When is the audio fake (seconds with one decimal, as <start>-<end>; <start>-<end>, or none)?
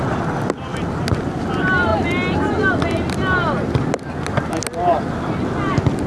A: 0.7-1.5